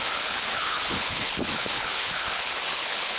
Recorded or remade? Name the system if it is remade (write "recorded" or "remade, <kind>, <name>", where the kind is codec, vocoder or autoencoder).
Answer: remade, codec, HILCodec